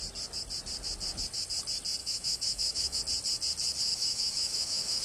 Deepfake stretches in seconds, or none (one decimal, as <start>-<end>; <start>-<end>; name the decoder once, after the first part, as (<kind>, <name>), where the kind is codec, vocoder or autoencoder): 2.0-3.0 (autoencoder, DAC-VAE); 3.9-5.0